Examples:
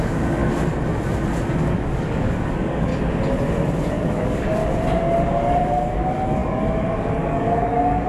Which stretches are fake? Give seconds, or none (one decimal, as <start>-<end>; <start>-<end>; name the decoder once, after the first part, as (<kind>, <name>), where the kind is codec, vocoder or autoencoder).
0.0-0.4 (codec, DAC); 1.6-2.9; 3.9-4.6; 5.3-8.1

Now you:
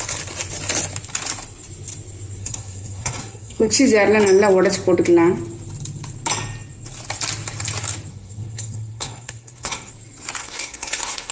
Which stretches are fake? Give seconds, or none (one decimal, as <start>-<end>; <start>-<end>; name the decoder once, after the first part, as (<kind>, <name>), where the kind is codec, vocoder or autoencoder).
2.4-3.7 (codec, SNAC); 8.1-9.9; 10.4-11.3

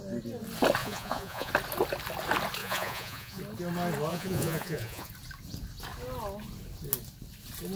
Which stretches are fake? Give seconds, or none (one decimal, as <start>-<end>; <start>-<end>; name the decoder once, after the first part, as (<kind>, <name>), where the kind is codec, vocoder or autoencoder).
0.8-1.5 (vocoder, Vocos); 2.6-3.4; 4.1-5.1

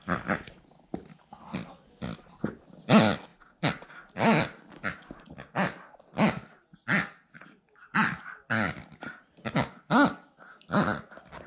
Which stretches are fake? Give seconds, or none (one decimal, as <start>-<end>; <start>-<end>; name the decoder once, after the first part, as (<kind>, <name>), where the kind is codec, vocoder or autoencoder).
none

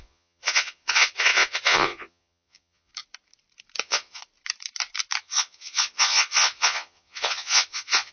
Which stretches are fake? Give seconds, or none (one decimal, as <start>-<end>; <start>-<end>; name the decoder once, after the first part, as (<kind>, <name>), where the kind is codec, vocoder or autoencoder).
0.0-2.9 (vocoder, Vocos); 3.8-4.2; 5.2-8.1

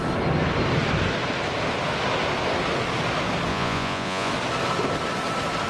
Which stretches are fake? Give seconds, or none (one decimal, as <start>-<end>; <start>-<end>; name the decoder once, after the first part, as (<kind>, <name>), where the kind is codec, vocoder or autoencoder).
3.5-4.3 (vocoder, Vocos)

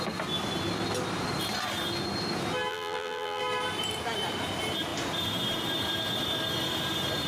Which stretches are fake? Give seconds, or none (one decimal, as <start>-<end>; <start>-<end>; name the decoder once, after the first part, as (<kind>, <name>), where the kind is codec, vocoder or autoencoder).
2.7-3.4 (vocoder, BigVGAN v2)